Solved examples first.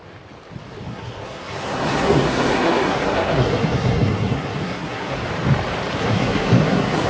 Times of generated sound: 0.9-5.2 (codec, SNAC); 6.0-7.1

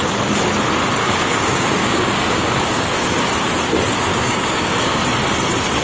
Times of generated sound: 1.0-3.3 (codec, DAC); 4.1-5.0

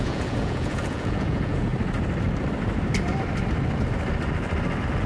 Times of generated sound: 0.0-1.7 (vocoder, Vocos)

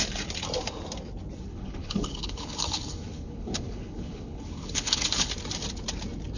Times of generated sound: 1.5-5.3 (codec, HILCodec)

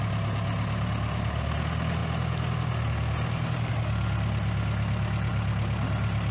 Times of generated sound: none

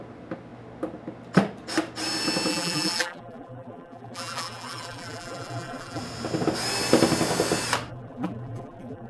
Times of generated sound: 2.5-6.0 (vocoder, BigVGAN v2); 7.9-9.1

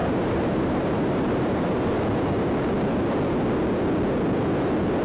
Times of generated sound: 0.0-1.9 (vocoder, BigVGAN v2)